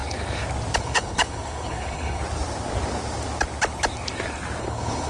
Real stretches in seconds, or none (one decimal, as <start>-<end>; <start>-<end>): 0.0-0.8; 2.2-4.6